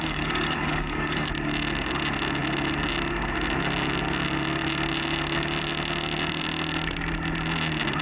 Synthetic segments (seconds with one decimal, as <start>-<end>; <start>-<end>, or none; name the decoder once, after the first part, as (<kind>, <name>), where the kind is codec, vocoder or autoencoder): 0.0-1.3 (codec, DAC)